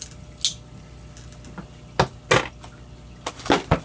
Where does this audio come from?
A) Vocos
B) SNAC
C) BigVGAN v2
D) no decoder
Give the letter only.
D